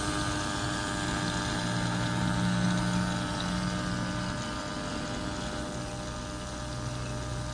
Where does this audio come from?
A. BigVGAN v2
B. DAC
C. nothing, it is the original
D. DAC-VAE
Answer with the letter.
C